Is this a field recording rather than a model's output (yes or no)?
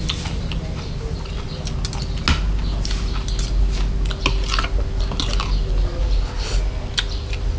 yes